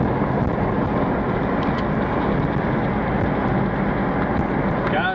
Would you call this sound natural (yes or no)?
yes